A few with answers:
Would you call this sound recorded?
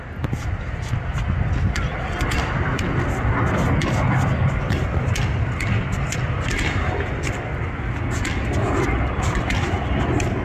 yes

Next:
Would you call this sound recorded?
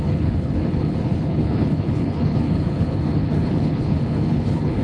no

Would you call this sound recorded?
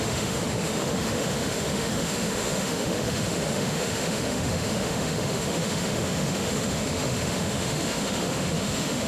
no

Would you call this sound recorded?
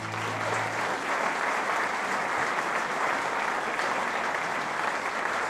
yes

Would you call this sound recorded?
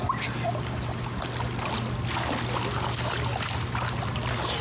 yes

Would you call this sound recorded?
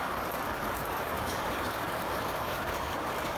no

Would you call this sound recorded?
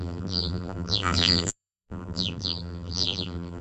no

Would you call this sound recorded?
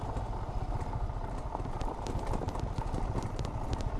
yes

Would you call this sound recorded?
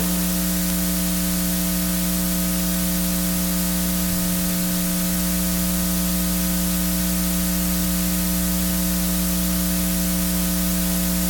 yes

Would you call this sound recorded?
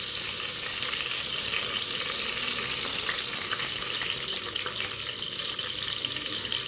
yes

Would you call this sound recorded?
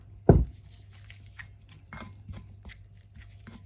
yes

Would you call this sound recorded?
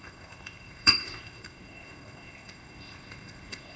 no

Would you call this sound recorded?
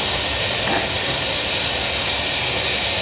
yes